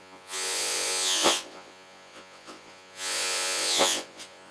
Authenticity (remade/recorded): remade